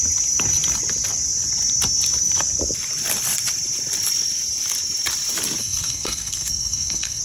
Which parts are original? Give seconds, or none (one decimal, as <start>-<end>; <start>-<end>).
0.0-5.6